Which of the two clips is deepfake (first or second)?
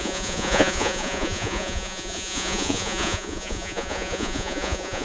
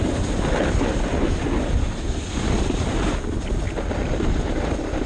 first